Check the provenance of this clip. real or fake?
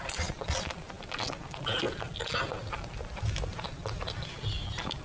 real